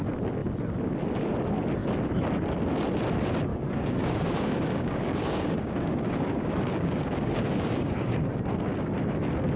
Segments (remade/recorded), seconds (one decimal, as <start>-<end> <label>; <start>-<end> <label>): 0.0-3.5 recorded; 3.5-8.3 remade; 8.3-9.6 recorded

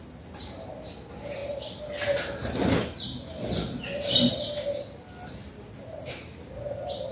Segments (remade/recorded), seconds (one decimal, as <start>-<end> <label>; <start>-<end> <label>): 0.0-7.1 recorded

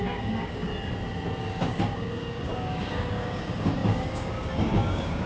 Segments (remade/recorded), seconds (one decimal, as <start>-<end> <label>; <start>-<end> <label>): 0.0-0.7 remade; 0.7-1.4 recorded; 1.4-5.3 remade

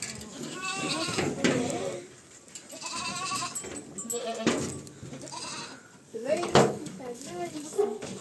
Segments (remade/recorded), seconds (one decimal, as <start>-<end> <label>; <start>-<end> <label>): 0.0-0.4 recorded; 0.4-1.3 remade; 1.3-6.1 recorded; 6.1-8.2 remade

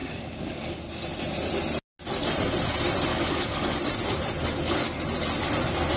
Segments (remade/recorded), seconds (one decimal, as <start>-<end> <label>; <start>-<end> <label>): 0.0-0.8 remade; 0.8-3.1 recorded; 3.1-3.7 remade; 3.7-6.0 recorded

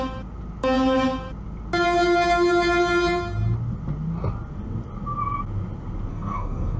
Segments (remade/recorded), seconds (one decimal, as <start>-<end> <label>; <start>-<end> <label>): 0.0-6.1 recorded; 6.1-6.8 remade